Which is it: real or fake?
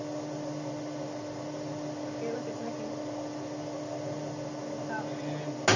real